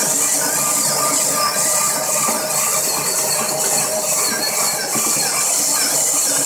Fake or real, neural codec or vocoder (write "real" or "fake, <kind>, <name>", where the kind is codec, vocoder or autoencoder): real